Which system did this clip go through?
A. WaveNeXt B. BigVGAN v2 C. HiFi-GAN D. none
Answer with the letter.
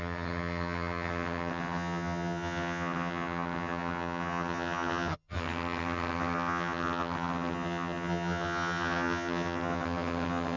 C